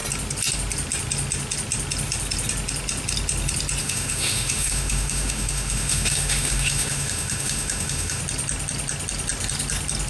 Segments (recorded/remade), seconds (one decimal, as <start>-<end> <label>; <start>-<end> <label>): 0.0-3.8 recorded; 3.8-8.2 remade; 8.2-10.1 recorded

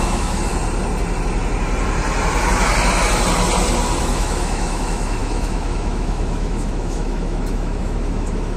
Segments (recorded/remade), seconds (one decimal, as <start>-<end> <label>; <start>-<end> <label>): 0.0-0.5 remade; 0.5-4.0 recorded; 4.0-8.6 remade